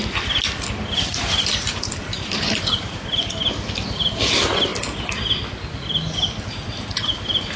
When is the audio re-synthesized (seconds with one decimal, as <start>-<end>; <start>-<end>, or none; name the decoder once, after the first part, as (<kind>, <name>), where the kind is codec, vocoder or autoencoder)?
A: 2.1-3.0 (vocoder, BigVGAN v2)